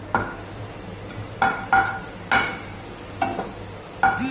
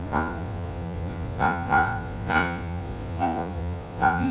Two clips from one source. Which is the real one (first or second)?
first